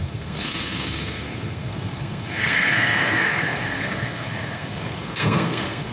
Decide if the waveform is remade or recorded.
remade